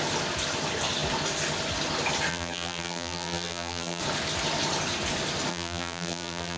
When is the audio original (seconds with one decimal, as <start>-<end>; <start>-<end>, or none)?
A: 0.0-2.3; 4.0-5.5